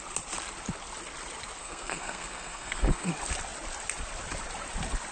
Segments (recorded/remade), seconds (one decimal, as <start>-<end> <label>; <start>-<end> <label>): 0.0-1.6 recorded; 1.6-3.1 remade; 3.1-5.1 recorded